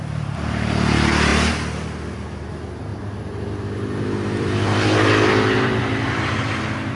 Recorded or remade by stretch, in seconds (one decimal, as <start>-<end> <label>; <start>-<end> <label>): 0.0-2.9 recorded; 2.9-5.8 remade; 5.8-7.0 recorded